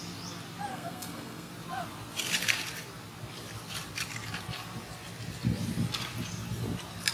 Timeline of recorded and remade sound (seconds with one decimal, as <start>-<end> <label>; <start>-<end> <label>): 0.0-0.7 recorded; 0.7-1.5 remade; 1.5-7.1 recorded